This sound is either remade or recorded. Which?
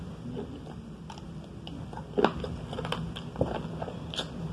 recorded